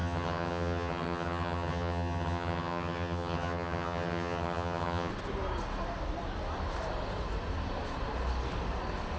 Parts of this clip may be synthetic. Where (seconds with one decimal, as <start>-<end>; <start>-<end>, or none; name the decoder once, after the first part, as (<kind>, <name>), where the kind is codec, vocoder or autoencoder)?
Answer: 0.0-5.1 (vocoder, HiFi-GAN)